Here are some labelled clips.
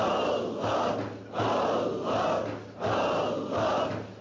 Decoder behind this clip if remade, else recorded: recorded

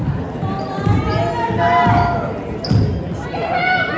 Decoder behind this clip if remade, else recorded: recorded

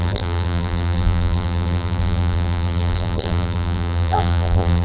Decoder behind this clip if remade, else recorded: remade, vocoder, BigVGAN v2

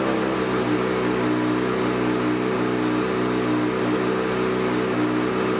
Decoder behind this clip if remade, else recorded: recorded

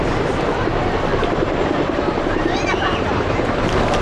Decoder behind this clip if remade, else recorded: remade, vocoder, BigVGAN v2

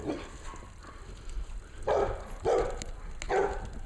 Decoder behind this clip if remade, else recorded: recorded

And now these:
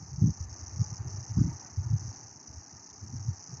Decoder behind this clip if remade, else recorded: recorded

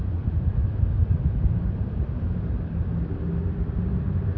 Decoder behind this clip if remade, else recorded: remade, vocoder, BigVGAN v2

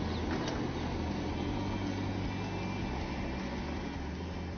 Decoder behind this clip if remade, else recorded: recorded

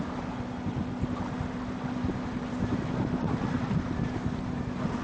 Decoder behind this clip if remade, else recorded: recorded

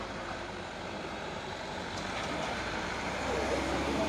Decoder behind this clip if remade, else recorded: remade, vocoder, BigVGAN v2